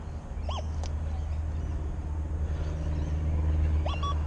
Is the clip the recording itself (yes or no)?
yes